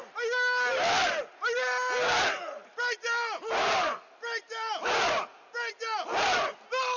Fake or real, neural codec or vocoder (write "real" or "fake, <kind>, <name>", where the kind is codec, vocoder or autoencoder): real